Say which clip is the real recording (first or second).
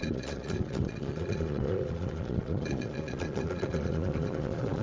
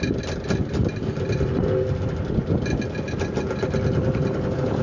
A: second